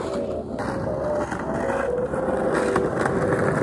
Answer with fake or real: real